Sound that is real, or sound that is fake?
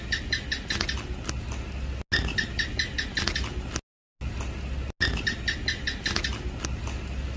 real